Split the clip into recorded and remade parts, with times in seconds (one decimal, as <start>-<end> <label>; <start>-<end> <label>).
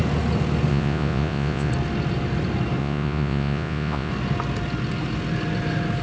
0.0-0.7 recorded; 0.7-1.7 remade; 1.7-2.8 recorded; 2.8-4.1 remade; 4.1-6.0 recorded